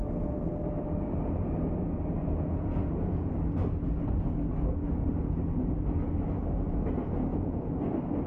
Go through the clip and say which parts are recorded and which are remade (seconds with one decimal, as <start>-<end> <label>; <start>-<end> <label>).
0.0-2.2 recorded; 2.2-3.3 remade; 3.3-7.3 recorded; 7.3-7.8 remade; 7.8-8.3 recorded